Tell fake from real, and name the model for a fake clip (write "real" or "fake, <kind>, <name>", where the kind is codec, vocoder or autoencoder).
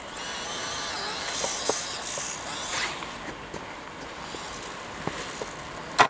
real